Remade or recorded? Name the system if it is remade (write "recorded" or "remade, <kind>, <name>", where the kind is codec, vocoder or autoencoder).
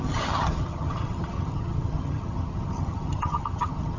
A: remade, vocoder, HiFi-GAN